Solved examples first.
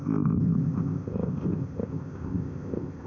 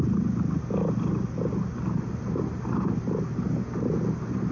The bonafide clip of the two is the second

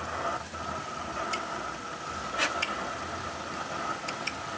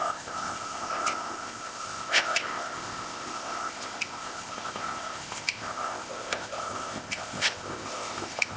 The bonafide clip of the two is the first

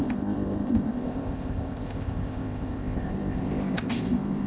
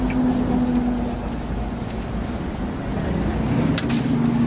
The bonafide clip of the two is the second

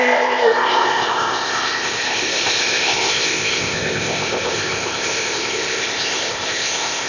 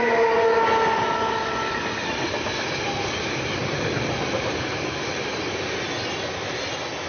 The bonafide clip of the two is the second